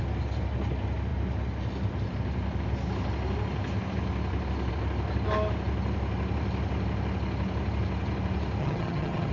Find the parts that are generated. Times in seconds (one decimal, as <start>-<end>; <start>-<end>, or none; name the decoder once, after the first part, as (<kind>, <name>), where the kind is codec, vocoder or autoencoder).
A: 8.6-9.3 (vocoder, HiFi-GAN)